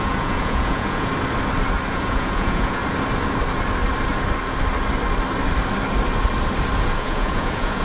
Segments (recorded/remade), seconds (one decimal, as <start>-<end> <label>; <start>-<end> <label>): 0.0-1.1 remade; 1.1-1.9 recorded; 1.9-2.8 remade; 2.8-6.8 recorded; 6.8-7.8 remade